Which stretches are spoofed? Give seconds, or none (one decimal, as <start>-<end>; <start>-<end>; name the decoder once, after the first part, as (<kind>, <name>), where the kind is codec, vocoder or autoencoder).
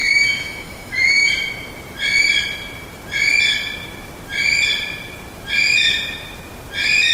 0.0-1.3 (autoencoder, DAC-VAE)